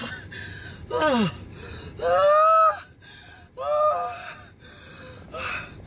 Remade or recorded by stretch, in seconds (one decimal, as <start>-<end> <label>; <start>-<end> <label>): 0.0-5.9 recorded